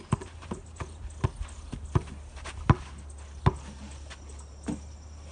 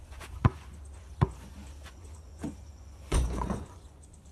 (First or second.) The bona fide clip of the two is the first